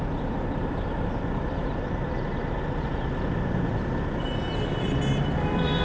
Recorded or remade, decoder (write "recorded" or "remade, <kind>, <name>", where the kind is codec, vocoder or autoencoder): remade, vocoder, BigVGAN v2